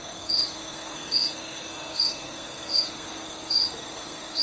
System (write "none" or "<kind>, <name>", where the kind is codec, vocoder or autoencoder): codec, SNAC